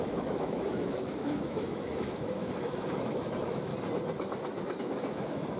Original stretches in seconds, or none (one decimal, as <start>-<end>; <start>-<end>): 3.7-4.8